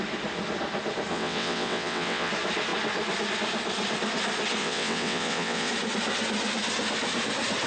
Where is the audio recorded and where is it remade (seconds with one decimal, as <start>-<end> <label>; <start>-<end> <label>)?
0.0-1.1 recorded; 1.1-2.3 remade; 2.3-4.6 recorded; 4.6-5.7 remade; 5.7-7.7 recorded